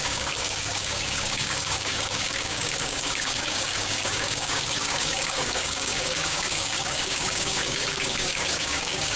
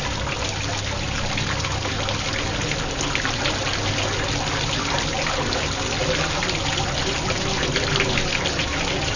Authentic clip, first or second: second